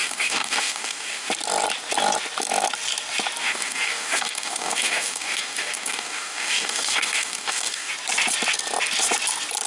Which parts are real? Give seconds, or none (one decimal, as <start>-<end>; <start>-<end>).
1.3-3.4; 7.9-9.7